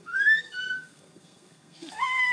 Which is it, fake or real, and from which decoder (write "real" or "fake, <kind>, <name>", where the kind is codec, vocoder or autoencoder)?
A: fake, codec, SNAC